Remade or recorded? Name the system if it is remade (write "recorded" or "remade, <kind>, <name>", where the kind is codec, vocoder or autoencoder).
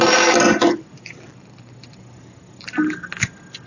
recorded